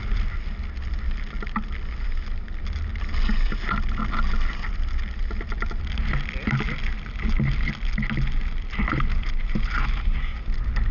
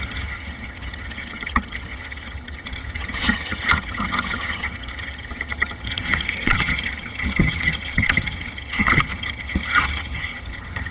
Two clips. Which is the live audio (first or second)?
first